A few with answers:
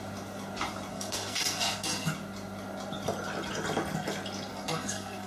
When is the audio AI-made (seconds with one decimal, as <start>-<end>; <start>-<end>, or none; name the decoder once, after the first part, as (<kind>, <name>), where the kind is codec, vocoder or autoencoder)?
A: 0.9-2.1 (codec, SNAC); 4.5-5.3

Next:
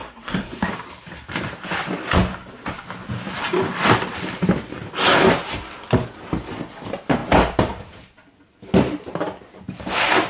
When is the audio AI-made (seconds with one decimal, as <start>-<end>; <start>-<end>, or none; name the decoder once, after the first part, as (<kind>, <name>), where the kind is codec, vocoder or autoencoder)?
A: 0.0-0.7 (codec, SNAC)

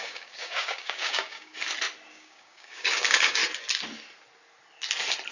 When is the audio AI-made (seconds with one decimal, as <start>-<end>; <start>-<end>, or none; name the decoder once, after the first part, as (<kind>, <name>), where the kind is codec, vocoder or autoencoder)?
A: 0.0-1.5 (codec, DAC); 2.1-3.4